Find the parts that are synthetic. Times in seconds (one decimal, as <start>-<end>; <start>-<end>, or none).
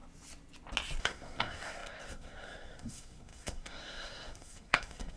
1.0-5.2